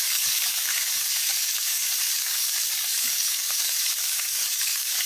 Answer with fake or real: fake